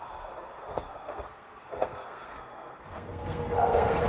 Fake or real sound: fake